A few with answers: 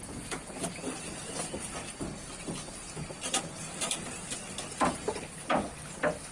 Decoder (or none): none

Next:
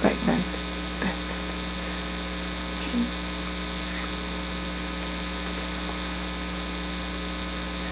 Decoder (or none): none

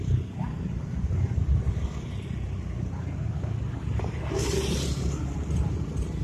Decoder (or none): none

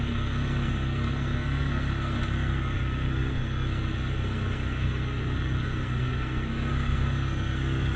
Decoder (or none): codec, SNAC